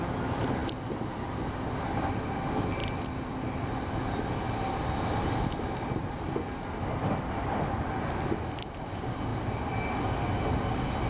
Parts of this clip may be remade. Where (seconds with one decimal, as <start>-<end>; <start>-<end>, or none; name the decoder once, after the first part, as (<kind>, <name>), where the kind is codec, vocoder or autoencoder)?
none